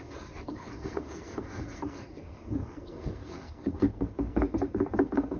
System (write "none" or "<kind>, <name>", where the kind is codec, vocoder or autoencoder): codec, SNAC